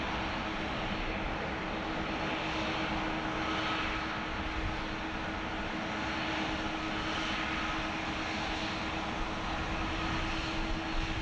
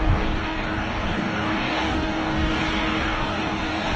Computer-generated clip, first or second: second